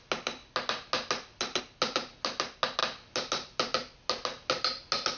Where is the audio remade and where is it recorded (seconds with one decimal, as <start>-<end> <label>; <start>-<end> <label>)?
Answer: 0.0-5.2 recorded